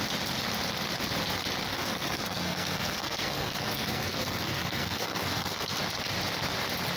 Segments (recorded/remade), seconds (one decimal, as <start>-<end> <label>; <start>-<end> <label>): 0.0-1.7 recorded; 1.7-5.8 remade; 5.8-7.0 recorded